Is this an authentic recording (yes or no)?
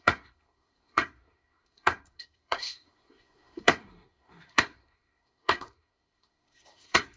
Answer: no